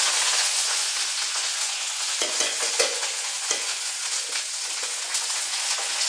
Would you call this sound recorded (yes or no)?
no